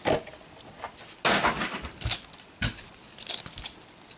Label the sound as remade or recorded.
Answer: recorded